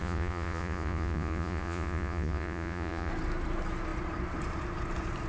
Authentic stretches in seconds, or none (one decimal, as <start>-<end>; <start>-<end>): 3.1-5.3